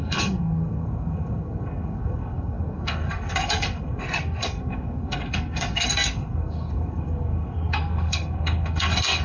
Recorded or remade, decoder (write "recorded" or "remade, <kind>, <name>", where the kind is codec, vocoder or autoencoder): remade, codec, SNAC